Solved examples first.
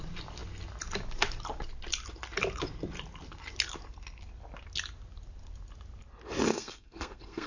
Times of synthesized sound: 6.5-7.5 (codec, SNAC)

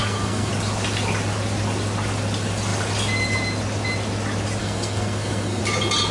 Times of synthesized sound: 0.0-0.5 (codec, SNAC); 4.6-5.6

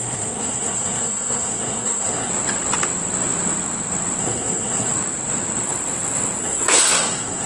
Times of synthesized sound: 0.0-2.3 (codec, SNAC); 4.2-4.9; 6.4-7.5

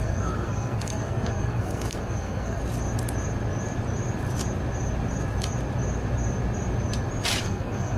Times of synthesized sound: 0.0-2.6 (codec, SNAC); 7.4-8.0

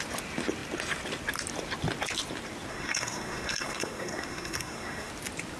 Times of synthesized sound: 2.7-5.1 (codec, SNAC)

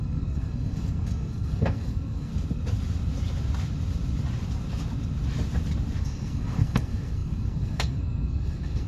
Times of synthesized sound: 0.0-2.3 (codec, SNAC); 6.0-8.9